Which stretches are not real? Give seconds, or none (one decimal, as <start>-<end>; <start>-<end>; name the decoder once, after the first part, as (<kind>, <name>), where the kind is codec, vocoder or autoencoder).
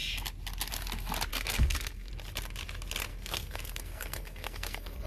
1.3-2.1 (codec, SNAC); 3.1-5.1